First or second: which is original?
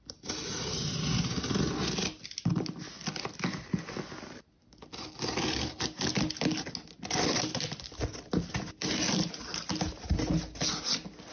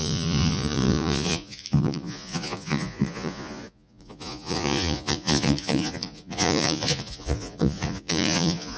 first